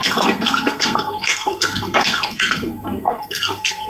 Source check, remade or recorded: remade